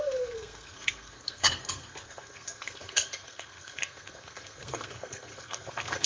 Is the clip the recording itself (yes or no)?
no